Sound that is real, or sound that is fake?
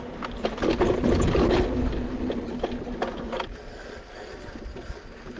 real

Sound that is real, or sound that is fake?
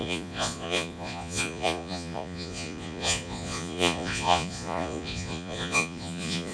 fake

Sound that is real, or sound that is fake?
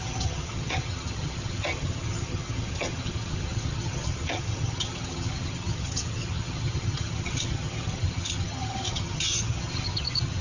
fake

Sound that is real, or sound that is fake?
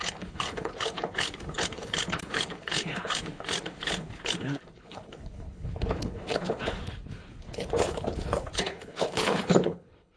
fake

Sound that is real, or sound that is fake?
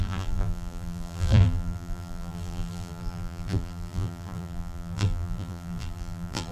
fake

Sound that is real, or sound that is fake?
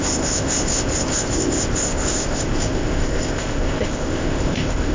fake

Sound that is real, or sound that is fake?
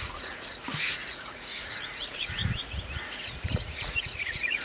fake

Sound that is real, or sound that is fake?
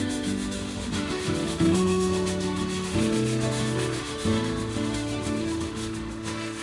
fake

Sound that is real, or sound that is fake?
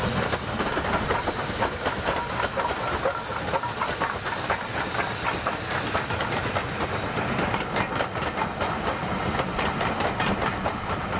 real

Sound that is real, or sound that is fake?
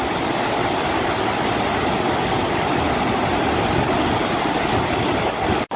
real